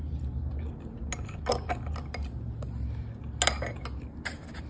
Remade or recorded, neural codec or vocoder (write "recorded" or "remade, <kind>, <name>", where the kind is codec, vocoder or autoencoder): recorded